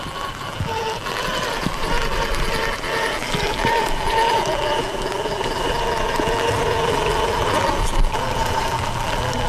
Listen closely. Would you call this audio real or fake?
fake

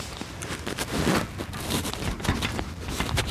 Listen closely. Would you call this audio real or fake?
real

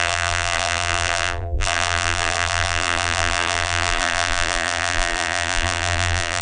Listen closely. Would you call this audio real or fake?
fake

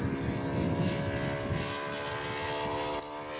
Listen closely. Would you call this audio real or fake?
real